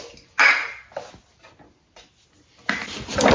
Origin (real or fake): real